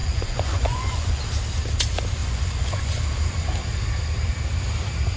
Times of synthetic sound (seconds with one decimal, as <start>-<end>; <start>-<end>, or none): 0.0-1.2; 2.2-3.0